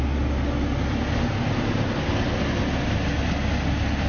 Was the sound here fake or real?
real